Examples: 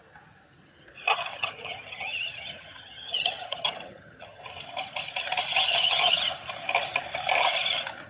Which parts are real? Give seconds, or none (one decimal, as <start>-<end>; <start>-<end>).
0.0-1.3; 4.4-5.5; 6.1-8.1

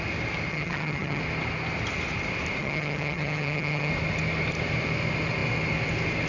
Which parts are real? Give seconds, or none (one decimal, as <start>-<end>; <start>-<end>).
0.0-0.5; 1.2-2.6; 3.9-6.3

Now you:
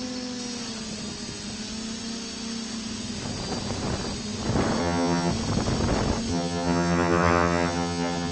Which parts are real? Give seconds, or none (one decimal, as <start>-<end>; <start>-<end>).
0.0-4.8; 5.3-6.3

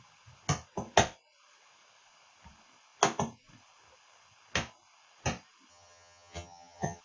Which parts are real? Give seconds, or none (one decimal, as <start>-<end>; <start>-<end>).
0.0-5.7

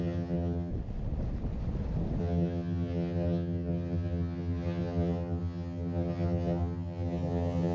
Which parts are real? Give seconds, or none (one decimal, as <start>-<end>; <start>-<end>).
0.7-2.2